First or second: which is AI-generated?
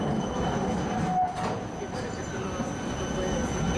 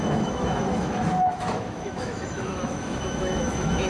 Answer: second